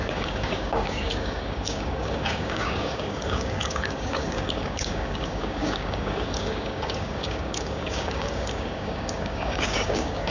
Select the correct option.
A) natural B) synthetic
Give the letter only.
B